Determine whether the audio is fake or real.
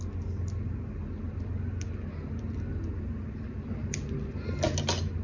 real